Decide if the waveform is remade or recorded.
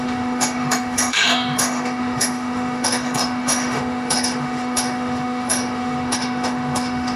remade